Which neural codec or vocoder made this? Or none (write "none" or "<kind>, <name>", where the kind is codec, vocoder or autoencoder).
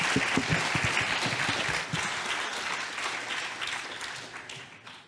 none